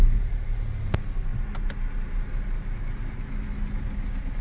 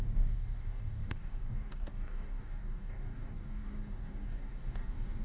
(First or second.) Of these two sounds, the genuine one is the first